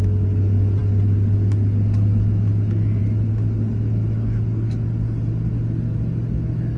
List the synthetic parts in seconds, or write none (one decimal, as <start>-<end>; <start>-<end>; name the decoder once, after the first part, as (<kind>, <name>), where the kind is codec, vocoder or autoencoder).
none